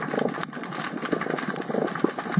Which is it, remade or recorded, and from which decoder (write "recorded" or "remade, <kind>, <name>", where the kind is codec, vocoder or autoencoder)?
recorded